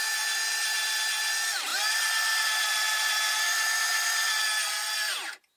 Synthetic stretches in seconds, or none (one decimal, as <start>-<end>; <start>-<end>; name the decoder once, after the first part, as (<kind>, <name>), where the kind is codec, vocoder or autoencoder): 1.7-4.4 (vocoder, BigVGAN v2)